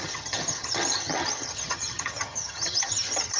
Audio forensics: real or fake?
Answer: fake